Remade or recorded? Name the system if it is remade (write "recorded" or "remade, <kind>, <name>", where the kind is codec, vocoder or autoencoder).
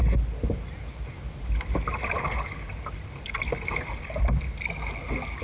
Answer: recorded